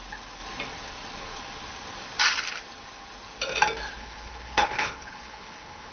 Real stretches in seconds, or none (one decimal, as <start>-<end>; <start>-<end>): 0.0-4.0